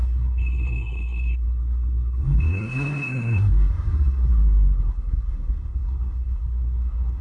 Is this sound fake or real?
fake